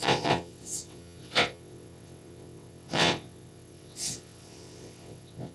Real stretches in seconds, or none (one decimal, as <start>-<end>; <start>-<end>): none